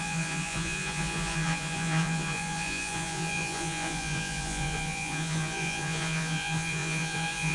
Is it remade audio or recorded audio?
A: remade